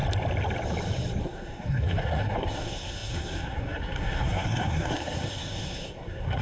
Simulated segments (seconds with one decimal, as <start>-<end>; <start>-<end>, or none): 1.2-6.4